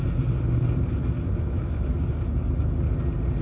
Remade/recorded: recorded